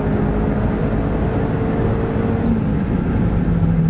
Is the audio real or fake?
real